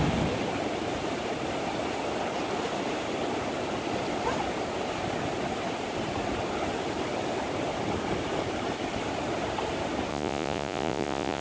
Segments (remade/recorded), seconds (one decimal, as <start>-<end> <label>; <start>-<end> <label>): 0.0-10.1 recorded; 10.1-11.4 remade